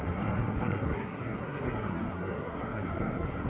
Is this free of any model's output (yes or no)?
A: no